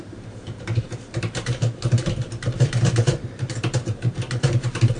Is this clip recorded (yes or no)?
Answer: no